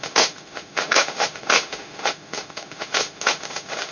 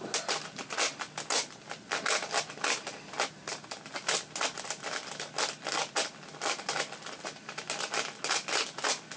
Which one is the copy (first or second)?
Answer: first